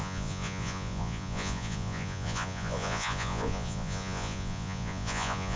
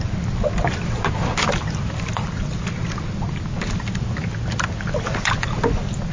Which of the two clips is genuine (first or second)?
second